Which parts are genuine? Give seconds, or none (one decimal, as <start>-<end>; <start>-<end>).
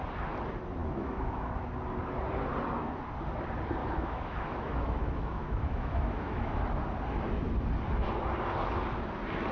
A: 0.0-0.8; 1.5-3.8; 6.6-9.5